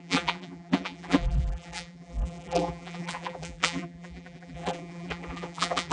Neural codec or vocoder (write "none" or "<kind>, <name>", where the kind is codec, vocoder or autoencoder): vocoder, BigVGAN v2